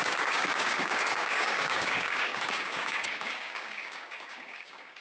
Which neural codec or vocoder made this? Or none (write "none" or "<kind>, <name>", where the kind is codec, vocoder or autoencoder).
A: codec, DAC